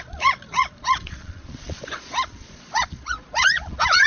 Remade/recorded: remade